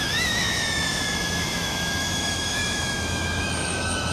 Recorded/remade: remade